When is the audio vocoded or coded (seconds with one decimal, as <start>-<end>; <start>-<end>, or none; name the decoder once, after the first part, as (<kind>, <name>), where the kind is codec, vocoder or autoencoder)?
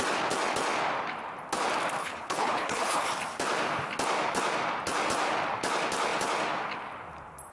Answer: 2.0-3.1 (codec, HILCodec)